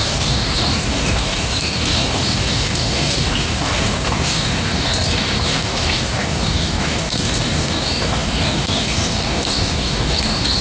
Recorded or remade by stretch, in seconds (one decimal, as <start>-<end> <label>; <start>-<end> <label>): 0.0-10.6 remade